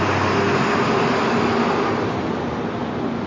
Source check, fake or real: real